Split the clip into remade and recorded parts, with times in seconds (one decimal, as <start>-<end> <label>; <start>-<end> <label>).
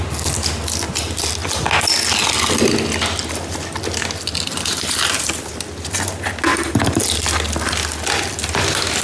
0.0-6.5 recorded; 6.5-7.0 remade; 7.0-9.0 recorded